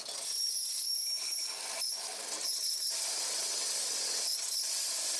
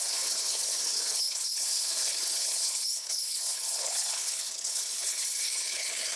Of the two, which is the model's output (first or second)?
second